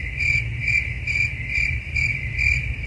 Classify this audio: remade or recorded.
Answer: recorded